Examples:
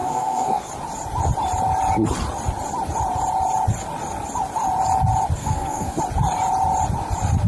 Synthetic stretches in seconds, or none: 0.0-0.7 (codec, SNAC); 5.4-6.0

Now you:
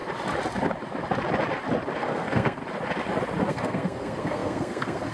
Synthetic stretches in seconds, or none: 2.0-2.6 (codec, SNAC); 3.5-5.1

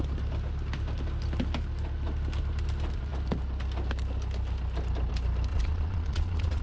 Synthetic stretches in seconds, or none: 5.5-6.6 (vocoder, Vocos)

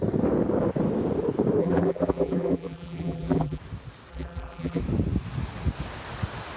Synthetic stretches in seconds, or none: 1.6-3.6 (vocoder, BigVGAN v2); 4.1-4.8

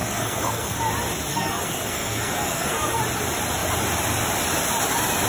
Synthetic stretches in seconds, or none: 0.0-0.8 (codec, SNAC); 1.3-3.0

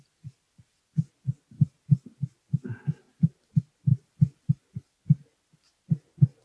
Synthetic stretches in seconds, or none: 3.9-4.5 (vocoder, BigVGAN v2)

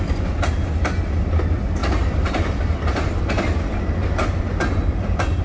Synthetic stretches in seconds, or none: none

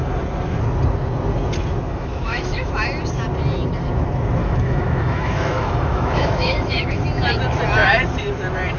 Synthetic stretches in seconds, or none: 1.9-2.7 (autoencoder, DAC-VAE); 4.4-7.0